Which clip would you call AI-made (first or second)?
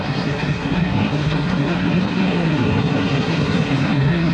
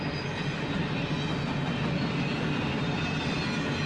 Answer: first